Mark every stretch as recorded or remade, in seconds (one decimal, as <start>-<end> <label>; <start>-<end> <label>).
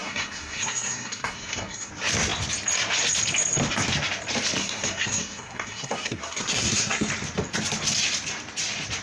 0.0-1.9 remade; 1.9-4.6 recorded; 4.6-7.1 remade; 7.1-9.0 recorded